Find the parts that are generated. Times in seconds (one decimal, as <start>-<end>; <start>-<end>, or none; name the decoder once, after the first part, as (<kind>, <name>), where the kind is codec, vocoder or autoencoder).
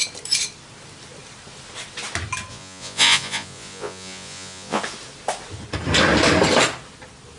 2.5-4.8 (vocoder, Vocos)